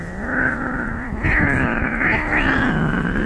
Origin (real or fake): real